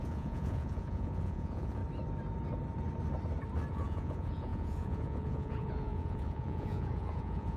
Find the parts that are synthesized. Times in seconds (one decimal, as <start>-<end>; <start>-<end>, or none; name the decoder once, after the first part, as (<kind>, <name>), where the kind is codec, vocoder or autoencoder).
0.0-1.8 (vocoder, Vocos); 3.7-7.6